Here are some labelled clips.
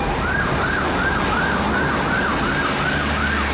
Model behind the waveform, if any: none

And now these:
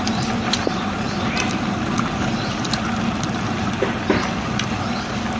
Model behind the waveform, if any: none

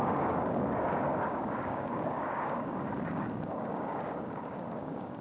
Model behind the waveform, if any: codec, DAC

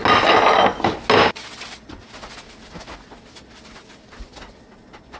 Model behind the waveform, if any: none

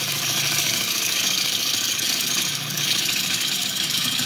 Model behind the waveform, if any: codec, DAC